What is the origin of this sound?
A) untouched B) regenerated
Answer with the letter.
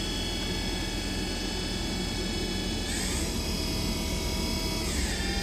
A